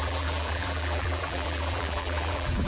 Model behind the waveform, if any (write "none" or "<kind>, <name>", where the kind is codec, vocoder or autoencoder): vocoder, BigVGAN v2